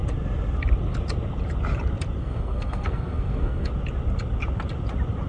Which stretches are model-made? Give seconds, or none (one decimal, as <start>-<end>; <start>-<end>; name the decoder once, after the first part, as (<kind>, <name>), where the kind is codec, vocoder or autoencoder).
2.2-3.7 (codec, SNAC)